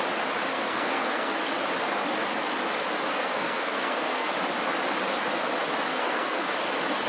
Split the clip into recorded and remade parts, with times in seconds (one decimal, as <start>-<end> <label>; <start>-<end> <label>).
0.0-0.5 recorded; 0.5-1.4 remade; 1.4-3.1 recorded; 3.1-4.3 remade; 4.3-5.9 recorded; 5.9-6.5 remade; 6.5-7.1 recorded